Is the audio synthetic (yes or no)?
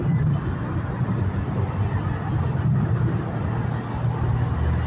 no